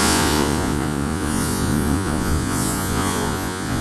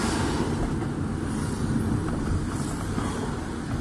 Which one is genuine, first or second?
second